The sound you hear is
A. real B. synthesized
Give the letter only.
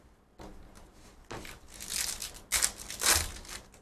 A